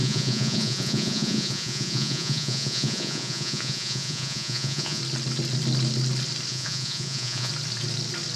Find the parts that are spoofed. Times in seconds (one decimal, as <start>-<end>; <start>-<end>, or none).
0.0-5.0; 6.5-7.5